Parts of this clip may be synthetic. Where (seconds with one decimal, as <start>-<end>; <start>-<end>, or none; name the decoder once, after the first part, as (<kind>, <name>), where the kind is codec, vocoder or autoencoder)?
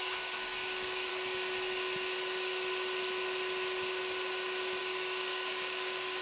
0.0-1.1 (codec, DAC); 4.8-6.2